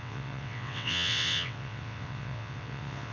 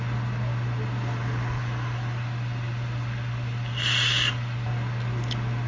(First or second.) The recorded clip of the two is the second